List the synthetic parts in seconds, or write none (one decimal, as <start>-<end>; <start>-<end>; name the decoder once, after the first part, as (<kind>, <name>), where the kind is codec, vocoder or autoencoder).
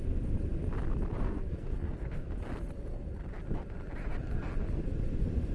1.2-2.3 (codec, SNAC)